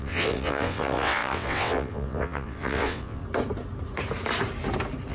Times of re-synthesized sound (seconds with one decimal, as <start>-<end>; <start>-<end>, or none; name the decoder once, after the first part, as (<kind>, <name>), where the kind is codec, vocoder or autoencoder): 0.0-3.2 (vocoder, WaveNeXt)